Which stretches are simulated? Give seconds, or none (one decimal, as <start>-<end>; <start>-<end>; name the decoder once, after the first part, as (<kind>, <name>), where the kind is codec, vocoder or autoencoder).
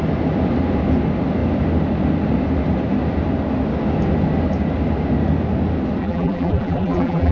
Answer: 6.0-7.3 (vocoder, BigVGAN v2)